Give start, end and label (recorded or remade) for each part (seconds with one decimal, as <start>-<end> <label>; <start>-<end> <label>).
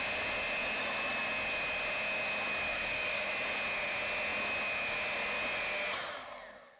0.0-2.7 recorded; 2.7-3.3 remade; 3.3-6.8 recorded